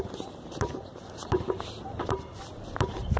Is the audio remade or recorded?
remade